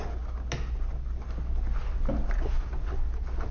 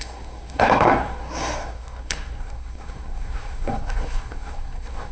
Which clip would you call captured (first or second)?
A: first